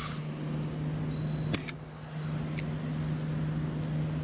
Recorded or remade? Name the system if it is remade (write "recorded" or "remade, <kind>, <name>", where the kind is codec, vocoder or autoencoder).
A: recorded